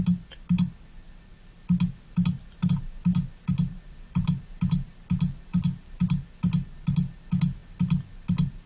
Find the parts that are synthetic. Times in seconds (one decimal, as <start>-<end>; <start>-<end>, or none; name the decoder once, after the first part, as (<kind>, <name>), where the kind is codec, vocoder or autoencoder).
none